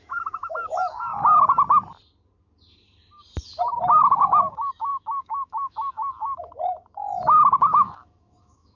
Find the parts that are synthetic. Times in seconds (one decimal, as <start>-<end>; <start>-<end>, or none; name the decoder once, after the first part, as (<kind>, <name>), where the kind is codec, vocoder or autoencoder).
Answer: 0.0-1.1 (autoencoder, DAC-VAE); 4.0-8.8